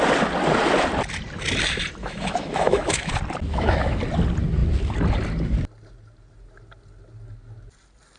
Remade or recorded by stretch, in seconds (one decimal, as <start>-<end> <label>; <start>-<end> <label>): 0.0-2.0 recorded; 2.0-3.1 remade; 3.1-3.5 recorded; 3.5-4.0 remade; 4.0-8.2 recorded